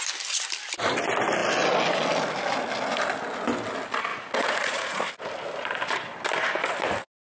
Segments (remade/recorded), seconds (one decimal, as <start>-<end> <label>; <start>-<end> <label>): 0.0-4.1 recorded; 4.1-5.0 remade; 5.0-7.3 recorded